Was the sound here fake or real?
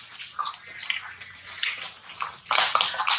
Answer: real